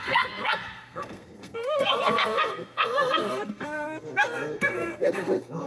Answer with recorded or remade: remade